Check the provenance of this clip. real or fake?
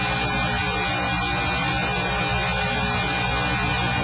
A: real